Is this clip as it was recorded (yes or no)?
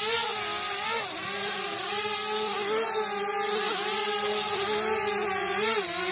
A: yes